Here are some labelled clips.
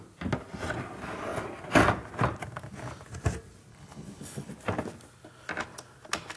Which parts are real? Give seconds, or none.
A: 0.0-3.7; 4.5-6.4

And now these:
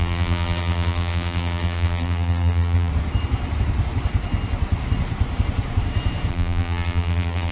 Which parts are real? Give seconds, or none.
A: 2.9-6.3

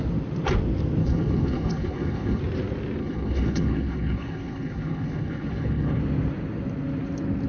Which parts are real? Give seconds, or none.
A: 0.0-1.0; 2.4-3.0; 6.0-7.5

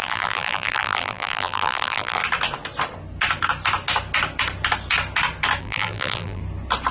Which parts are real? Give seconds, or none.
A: 2.2-5.6; 6.4-6.9

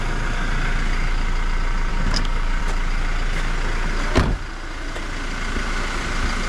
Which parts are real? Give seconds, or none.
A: 0.0-1.9; 2.6-6.5

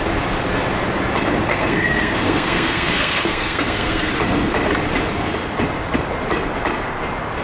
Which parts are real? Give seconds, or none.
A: 0.0-1.5; 4.1-7.4